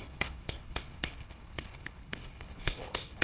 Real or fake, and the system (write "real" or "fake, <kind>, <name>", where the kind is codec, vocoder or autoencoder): fake, codec, HILCodec